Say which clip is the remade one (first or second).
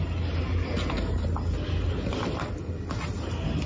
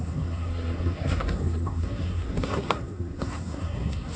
second